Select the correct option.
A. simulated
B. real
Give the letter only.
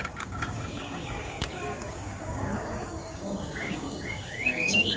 A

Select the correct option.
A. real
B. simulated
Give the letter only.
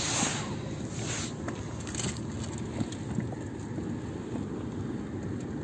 A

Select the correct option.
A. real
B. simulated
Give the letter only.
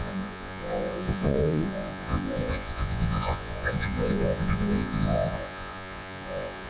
B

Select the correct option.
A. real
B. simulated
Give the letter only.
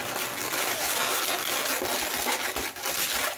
A